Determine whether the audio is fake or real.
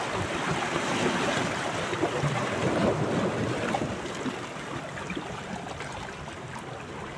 real